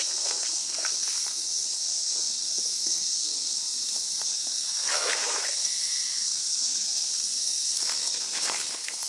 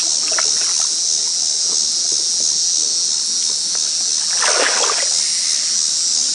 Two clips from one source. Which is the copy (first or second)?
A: first